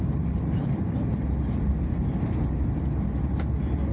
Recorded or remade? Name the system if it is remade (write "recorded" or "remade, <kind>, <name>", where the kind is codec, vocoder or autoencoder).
recorded